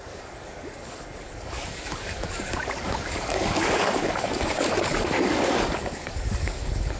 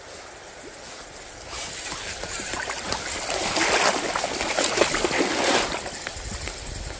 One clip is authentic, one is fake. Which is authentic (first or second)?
second